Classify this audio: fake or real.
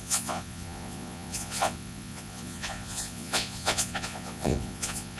fake